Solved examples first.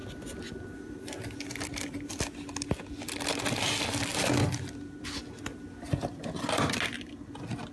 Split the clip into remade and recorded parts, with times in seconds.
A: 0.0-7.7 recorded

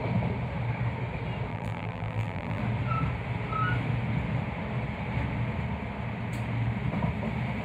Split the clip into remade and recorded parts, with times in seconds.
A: 0.0-1.5 recorded; 1.5-2.6 remade; 2.6-7.6 recorded

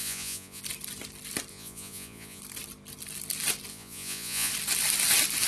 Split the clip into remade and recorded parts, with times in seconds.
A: 0.0-0.6 remade; 0.6-1.5 recorded; 1.5-2.4 remade; 2.4-3.7 recorded; 3.7-4.5 remade; 4.5-5.5 recorded

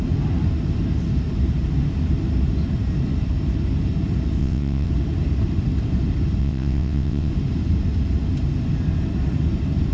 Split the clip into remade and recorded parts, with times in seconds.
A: 0.0-4.4 recorded; 4.4-4.9 remade; 4.9-6.4 recorded; 6.4-7.3 remade; 7.3-9.9 recorded

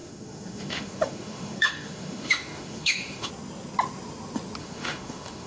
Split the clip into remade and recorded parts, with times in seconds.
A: 0.0-3.3 remade; 3.3-4.6 recorded; 4.6-5.5 remade